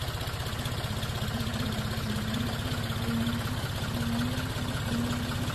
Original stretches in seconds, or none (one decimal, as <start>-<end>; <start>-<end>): 0.0-5.5